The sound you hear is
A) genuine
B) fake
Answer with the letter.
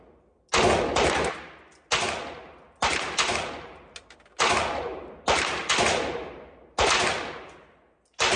A